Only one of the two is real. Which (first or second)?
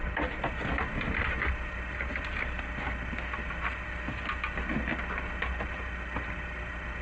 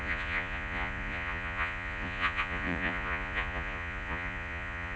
first